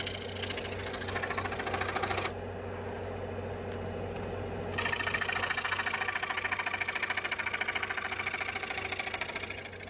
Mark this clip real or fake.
real